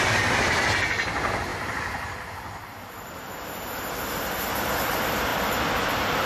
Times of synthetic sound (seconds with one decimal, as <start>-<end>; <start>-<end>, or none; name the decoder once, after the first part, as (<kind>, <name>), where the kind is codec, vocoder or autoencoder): none